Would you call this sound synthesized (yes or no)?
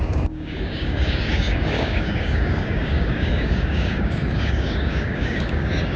yes